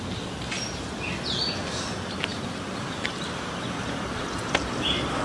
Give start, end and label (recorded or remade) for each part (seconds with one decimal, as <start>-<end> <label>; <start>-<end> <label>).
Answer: 0.0-5.2 recorded